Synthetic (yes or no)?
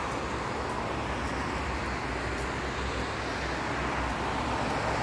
no